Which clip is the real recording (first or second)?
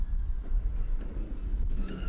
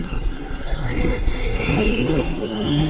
first